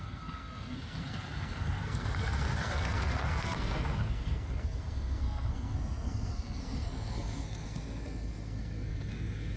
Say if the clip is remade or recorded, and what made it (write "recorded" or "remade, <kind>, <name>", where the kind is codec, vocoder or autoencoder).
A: remade, codec, SNAC